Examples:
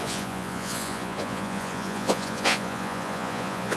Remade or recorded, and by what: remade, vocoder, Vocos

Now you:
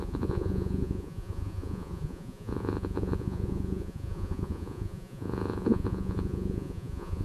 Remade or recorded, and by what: remade, vocoder, Vocos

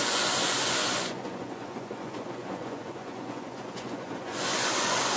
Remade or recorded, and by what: remade, vocoder, Vocos